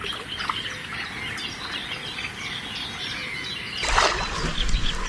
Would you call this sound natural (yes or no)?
yes